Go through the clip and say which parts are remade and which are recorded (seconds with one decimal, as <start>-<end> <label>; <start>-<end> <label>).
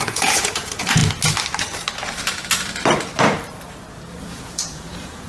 0.0-1.0 remade; 1.0-4.2 recorded; 4.2-5.3 remade